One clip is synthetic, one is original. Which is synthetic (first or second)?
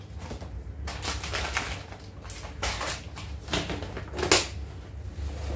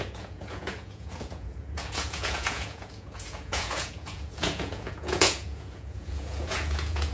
second